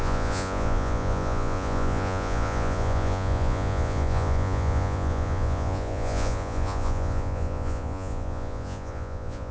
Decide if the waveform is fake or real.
fake